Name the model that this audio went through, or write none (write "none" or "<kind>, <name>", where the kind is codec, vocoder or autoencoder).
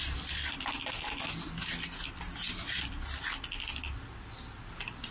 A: none